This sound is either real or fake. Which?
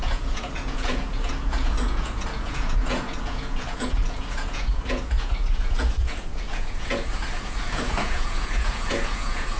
fake